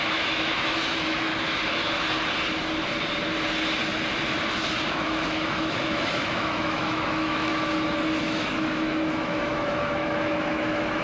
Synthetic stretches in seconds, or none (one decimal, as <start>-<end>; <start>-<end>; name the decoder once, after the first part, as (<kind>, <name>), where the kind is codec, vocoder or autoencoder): 0.0-1.3 (autoencoder, DAC-VAE); 4.9-7.5; 8.2-11.0